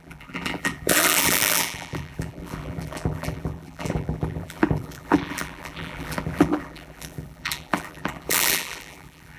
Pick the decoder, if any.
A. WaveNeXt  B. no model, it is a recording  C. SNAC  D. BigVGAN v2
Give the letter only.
D